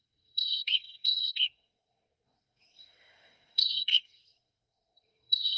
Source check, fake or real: fake